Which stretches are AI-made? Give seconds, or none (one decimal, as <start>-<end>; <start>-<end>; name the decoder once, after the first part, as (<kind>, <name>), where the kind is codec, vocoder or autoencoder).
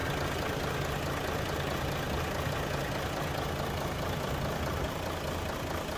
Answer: none